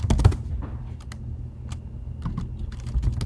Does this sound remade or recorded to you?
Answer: recorded